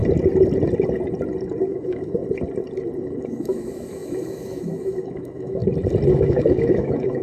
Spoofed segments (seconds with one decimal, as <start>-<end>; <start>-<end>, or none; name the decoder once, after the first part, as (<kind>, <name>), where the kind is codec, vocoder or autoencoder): 1.6-2.2 (autoencoder, DAC-VAE); 3.2-5.6; 6.1-7.2